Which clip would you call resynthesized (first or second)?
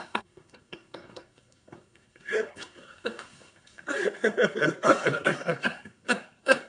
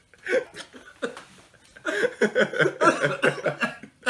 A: first